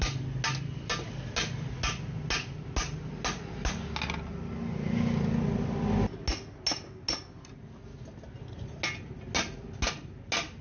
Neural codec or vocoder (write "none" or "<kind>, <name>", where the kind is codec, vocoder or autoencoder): none